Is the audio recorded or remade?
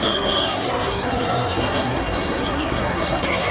remade